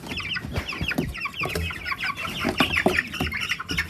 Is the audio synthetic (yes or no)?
no